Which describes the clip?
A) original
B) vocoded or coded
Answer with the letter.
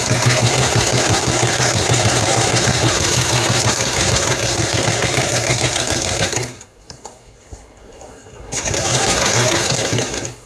B